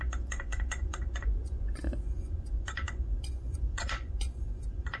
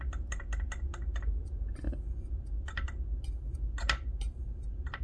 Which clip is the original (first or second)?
second